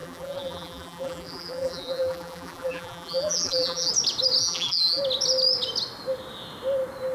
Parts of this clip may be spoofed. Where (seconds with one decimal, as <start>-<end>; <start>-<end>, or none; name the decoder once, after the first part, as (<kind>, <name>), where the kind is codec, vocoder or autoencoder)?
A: 0.0-3.9 (vocoder, BigVGAN v2); 4.4-5.0